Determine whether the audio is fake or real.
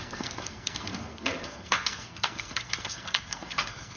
fake